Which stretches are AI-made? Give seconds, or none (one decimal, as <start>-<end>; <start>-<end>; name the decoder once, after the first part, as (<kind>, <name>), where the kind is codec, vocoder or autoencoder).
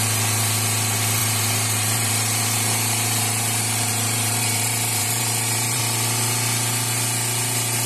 1.2-5.8 (vocoder, BigVGAN v2)